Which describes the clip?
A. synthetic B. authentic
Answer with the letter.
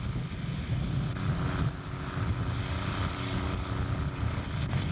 A